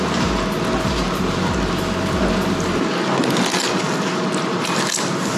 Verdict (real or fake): real